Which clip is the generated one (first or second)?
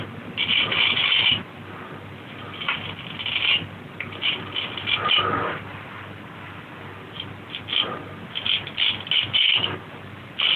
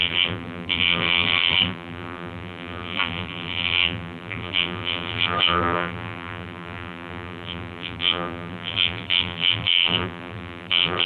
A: second